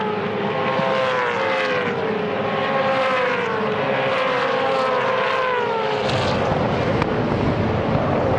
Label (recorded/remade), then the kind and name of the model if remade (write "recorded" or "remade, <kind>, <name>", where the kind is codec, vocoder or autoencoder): recorded